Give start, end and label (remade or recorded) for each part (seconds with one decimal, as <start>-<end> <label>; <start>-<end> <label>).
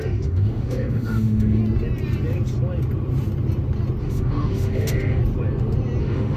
0.0-1.6 remade; 1.6-4.0 recorded; 4.0-5.2 remade; 5.2-6.0 recorded; 6.0-6.4 remade